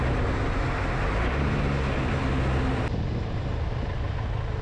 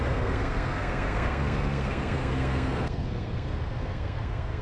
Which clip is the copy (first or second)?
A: second